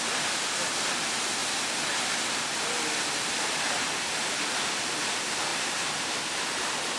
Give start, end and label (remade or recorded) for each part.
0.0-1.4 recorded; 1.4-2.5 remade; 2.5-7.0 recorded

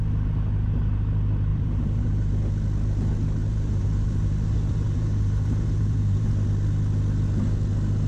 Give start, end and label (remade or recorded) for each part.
0.0-1.5 recorded; 1.5-2.3 remade; 2.3-3.4 recorded; 3.4-6.3 remade; 6.3-8.1 recorded

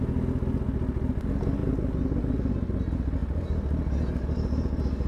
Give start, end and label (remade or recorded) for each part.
0.0-5.1 recorded

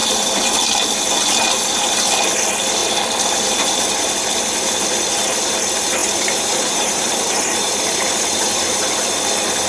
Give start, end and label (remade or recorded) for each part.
0.0-6.0 recorded; 6.0-8.9 remade; 8.9-9.7 recorded

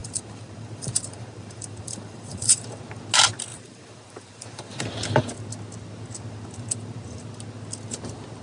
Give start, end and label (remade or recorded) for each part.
0.0-2.8 remade; 2.8-3.5 recorded; 3.5-5.3 remade; 5.3-8.4 recorded